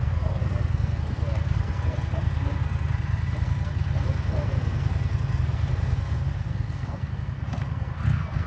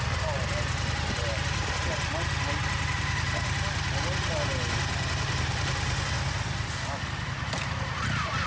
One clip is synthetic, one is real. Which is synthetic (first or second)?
first